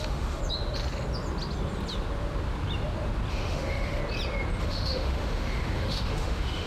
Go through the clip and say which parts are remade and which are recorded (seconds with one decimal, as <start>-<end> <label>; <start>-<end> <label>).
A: 0.0-0.4 remade; 0.4-3.3 recorded; 3.3-4.0 remade; 4.0-4.6 recorded; 4.6-6.7 remade